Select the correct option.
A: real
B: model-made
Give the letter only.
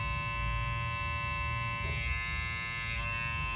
A